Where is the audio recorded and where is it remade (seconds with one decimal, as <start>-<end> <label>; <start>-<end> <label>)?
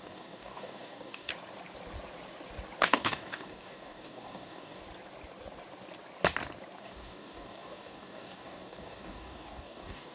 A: 0.0-1.3 remade; 1.3-2.8 recorded; 2.8-4.8 remade; 4.8-6.8 recorded; 6.8-10.1 remade